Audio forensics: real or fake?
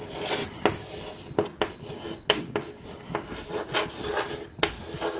real